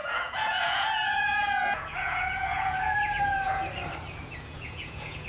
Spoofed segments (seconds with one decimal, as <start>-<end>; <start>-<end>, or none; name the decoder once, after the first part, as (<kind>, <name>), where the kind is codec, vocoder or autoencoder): 0.0-3.6 (vocoder, Vocos); 4.3-5.3